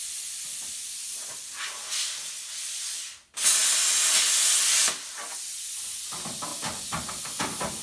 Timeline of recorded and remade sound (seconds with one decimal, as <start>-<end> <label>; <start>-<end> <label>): 0.0-7.8 recorded